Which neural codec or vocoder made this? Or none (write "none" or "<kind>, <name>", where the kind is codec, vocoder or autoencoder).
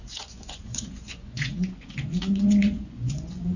vocoder, Vocos